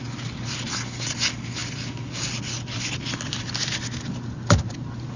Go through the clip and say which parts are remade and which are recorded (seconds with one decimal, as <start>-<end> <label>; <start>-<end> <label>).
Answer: 0.0-5.2 recorded